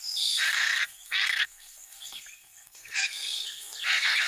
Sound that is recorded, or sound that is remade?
remade